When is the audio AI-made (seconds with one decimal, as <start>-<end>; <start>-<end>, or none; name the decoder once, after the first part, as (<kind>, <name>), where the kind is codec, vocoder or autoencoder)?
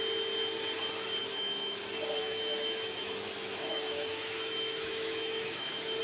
1.2-1.8 (autoencoder, DAC-VAE); 2.2-6.0